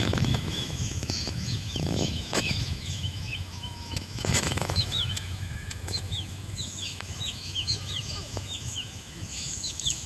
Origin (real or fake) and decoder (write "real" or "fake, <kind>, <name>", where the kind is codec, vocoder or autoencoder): fake, autoencoder, DAC-VAE